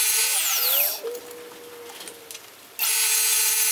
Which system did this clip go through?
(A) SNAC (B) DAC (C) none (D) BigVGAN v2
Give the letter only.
C